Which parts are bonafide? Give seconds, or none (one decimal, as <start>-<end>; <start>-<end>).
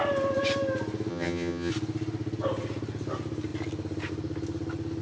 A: 0.0-1.1; 1.7-5.0